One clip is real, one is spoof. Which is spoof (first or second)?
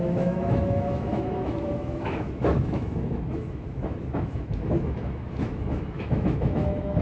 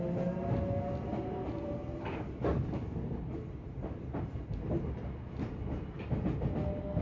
first